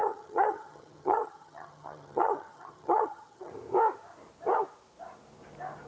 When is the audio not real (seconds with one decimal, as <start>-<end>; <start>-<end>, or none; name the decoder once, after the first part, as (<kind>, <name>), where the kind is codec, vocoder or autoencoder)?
0.0-3.5 (vocoder, HiFi-GAN)